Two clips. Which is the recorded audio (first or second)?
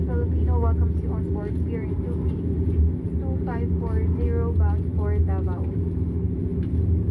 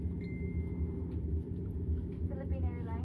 first